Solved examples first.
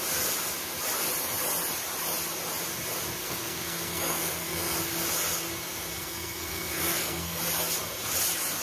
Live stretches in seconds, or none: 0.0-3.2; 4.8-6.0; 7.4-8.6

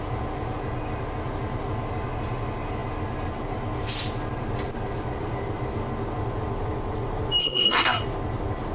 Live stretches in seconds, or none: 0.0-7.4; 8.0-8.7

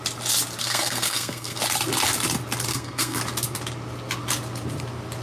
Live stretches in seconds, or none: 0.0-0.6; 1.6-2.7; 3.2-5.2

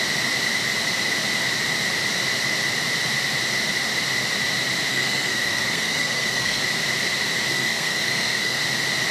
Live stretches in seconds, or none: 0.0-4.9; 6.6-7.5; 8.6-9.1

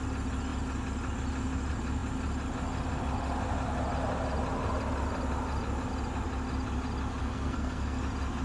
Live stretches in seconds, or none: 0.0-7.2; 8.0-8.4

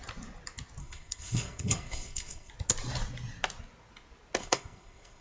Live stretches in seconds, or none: 0.0-0.8; 2.5-4.4